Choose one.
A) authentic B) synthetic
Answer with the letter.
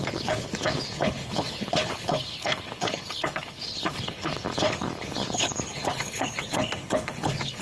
B